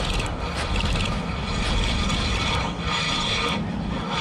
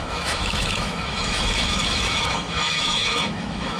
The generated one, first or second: second